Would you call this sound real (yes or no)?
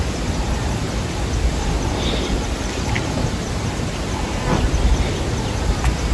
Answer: yes